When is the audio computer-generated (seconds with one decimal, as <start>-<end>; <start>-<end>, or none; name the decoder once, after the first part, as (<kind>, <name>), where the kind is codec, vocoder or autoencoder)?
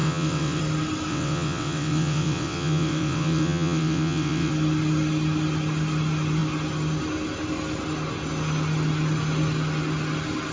0.0-0.6 (vocoder, WaveNeXt); 1.1-4.5